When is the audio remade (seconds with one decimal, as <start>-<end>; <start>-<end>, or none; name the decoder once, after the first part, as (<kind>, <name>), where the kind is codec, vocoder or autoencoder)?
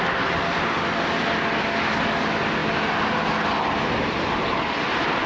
none